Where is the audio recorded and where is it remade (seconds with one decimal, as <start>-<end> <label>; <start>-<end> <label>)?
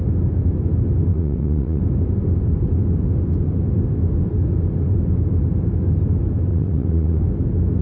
0.0-1.1 recorded; 1.1-1.8 remade; 1.8-6.5 recorded; 6.5-7.2 remade; 7.2-7.8 recorded